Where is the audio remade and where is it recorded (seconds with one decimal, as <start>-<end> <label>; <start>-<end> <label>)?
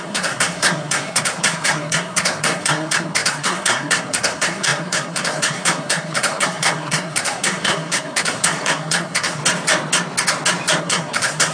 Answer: 0.0-9.4 remade; 9.4-10.8 recorded; 10.8-11.5 remade